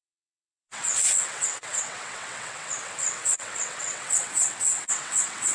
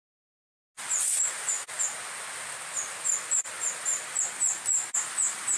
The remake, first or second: first